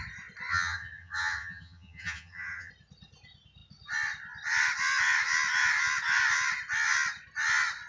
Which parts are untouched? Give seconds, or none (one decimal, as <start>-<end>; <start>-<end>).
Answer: 0.0-0.5; 2.7-7.9